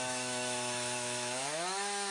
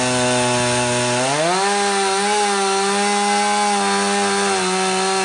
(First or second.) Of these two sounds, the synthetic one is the first